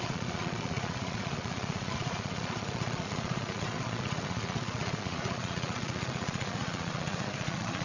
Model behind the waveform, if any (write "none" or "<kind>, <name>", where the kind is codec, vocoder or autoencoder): vocoder, Vocos